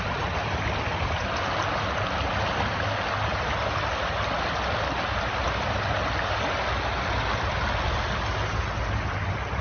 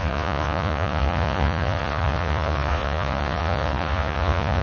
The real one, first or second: first